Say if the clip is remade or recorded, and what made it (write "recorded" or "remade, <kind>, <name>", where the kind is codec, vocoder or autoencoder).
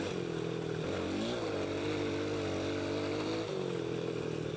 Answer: recorded